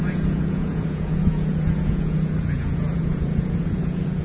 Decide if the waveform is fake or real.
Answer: fake